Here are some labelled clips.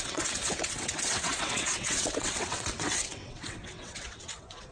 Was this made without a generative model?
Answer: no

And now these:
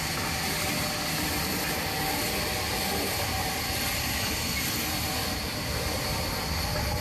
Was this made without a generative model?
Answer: yes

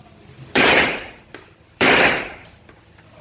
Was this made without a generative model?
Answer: no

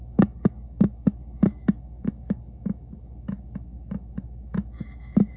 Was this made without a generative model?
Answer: no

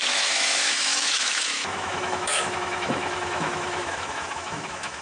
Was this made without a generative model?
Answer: no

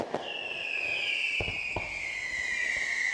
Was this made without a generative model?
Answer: yes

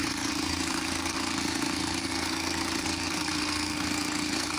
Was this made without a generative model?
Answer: no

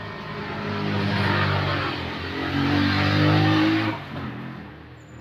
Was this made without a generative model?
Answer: yes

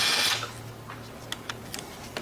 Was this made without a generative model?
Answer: yes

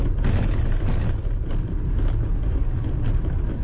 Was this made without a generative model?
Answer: yes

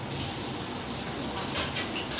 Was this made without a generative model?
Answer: yes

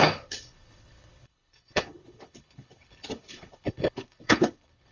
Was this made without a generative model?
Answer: no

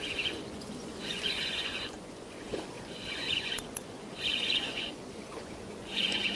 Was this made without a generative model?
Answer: no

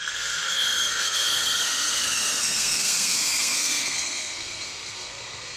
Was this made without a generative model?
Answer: no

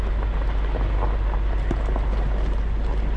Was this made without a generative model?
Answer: yes